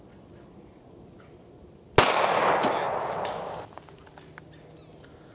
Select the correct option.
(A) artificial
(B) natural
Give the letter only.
B